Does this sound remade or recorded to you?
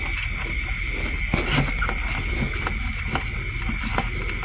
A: recorded